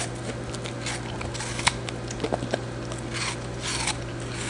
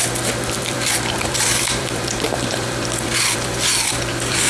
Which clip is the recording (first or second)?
first